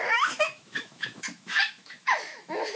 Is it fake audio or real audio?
fake